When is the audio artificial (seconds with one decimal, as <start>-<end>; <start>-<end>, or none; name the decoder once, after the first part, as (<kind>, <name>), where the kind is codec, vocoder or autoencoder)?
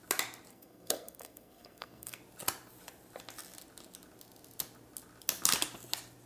0.5-2.2 (codec, SNAC)